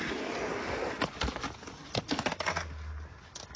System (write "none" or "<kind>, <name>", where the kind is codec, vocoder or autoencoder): none